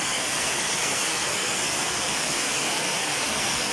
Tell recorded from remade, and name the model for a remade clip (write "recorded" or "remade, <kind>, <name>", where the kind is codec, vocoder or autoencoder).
remade, codec, SNAC